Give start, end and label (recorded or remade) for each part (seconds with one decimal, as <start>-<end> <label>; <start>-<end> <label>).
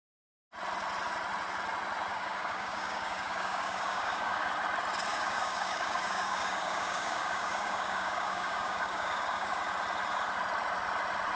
0.0-2.1 recorded; 2.1-4.5 remade; 4.5-5.1 recorded; 5.1-9.6 remade; 9.6-11.3 recorded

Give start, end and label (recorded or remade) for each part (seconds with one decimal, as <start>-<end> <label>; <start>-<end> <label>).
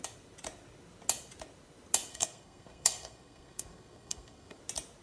0.0-2.1 recorded; 2.1-4.6 remade; 4.6-5.0 recorded